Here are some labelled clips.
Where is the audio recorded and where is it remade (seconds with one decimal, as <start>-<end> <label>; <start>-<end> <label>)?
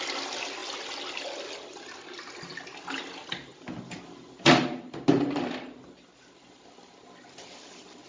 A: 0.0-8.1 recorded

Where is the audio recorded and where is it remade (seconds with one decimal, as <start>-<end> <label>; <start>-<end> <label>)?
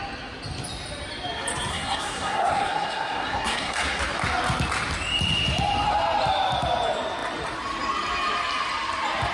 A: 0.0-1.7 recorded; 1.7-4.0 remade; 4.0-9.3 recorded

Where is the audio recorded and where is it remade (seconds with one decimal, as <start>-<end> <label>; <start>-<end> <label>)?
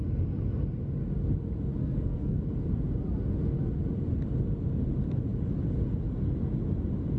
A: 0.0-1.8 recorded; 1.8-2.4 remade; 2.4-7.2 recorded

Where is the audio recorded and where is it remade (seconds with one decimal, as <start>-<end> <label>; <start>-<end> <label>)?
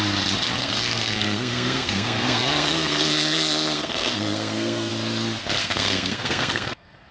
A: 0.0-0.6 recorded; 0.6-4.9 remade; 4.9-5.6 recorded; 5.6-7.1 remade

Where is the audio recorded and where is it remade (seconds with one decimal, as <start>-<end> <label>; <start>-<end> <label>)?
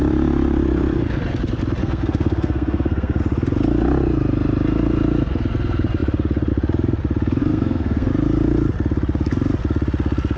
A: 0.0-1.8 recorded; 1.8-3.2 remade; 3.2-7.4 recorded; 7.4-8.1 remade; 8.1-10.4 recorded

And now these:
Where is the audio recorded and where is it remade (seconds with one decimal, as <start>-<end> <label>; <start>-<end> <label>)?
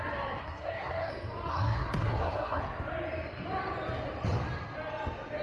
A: 0.0-0.4 recorded; 0.4-1.1 remade; 1.1-1.5 recorded; 1.5-2.6 remade; 2.6-5.4 recorded